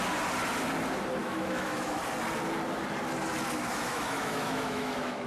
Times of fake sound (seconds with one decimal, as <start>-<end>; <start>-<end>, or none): 1.2-2.0; 3.7-5.3